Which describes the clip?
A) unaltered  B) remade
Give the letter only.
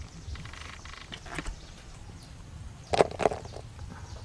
A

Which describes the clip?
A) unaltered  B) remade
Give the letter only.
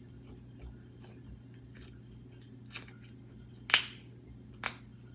A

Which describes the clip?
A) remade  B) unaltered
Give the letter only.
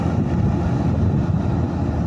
B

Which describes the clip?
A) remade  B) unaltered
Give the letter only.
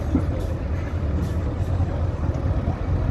B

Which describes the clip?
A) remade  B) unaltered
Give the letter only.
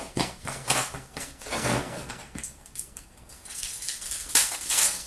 A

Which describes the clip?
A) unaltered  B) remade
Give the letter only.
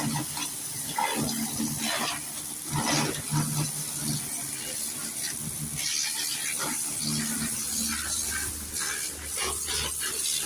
A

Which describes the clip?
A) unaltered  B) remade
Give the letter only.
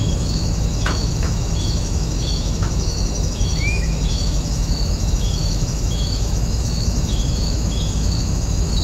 B